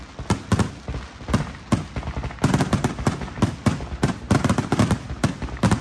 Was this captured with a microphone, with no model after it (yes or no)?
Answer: yes